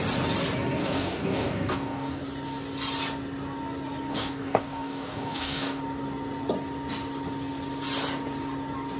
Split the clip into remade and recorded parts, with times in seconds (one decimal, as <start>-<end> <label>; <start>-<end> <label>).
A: 0.0-0.8 recorded; 0.8-2.2 remade; 2.2-4.1 recorded; 4.1-5.8 remade; 5.8-9.0 recorded